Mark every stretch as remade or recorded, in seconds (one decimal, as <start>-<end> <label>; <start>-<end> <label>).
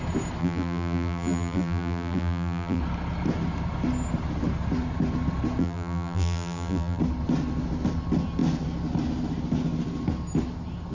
0.0-0.4 recorded; 0.4-2.8 remade; 2.8-5.6 recorded; 5.6-7.0 remade; 7.0-10.9 recorded